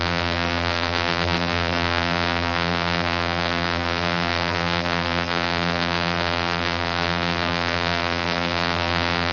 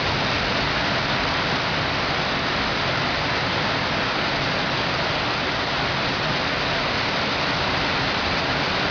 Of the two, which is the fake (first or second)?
first